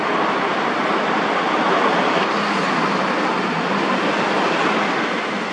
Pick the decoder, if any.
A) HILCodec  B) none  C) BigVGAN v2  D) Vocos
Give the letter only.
B